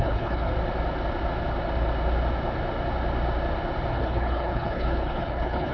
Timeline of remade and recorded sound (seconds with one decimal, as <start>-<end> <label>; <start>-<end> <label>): 0.0-0.5 remade; 0.5-3.9 recorded; 3.9-5.7 remade